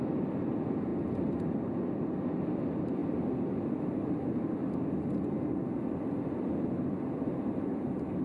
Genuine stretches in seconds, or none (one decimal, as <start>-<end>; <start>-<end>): 0.0-8.2